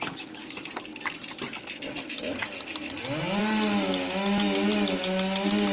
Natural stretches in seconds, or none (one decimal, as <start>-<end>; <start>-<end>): 0.0-5.7